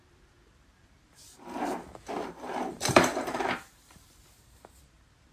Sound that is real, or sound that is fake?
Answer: fake